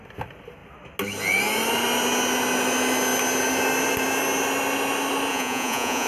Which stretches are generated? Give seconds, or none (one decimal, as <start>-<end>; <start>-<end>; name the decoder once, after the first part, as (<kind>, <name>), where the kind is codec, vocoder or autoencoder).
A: 5.3-6.1 (vocoder, Vocos)